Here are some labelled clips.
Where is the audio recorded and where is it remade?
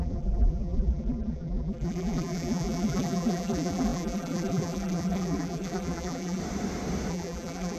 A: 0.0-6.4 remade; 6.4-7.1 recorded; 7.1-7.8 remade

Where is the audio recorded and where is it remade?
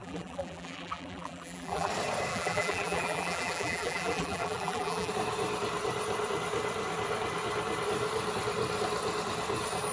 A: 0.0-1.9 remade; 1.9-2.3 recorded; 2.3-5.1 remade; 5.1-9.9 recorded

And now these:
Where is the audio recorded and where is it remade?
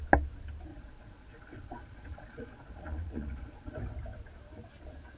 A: 0.0-0.7 recorded; 0.7-3.8 remade; 3.8-5.2 recorded